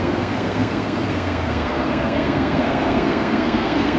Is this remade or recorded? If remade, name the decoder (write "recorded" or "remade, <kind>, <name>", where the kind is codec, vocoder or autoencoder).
remade, codec, SNAC